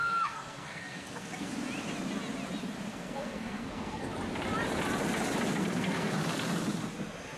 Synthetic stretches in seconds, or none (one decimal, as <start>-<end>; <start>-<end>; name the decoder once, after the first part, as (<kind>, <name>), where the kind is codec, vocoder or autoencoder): 0.0-1.5 (codec, SNAC); 2.9-4.1; 5.5-6.1